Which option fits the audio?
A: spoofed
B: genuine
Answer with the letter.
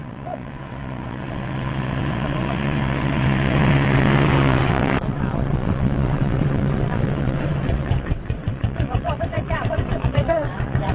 A